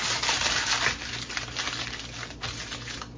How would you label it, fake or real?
real